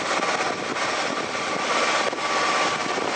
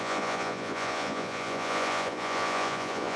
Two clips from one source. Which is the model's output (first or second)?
second